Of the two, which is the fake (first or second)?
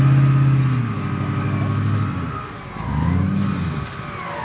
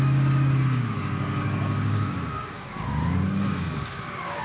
second